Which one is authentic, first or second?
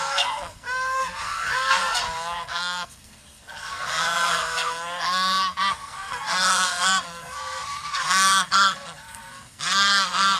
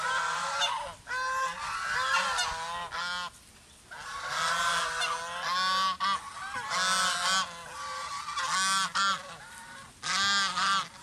second